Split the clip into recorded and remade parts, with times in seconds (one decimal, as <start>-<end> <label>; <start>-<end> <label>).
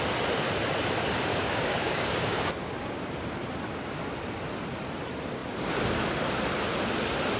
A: 0.0-1.3 recorded; 1.3-2.5 remade; 2.5-7.4 recorded